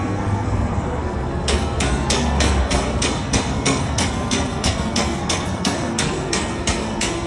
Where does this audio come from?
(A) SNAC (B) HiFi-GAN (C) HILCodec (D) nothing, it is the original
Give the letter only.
A